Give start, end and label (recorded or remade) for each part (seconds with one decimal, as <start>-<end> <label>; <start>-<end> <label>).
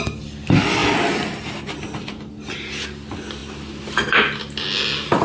0.0-0.8 recorded; 0.8-1.7 remade; 1.7-5.2 recorded